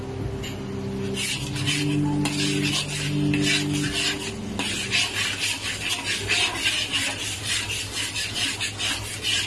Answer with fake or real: real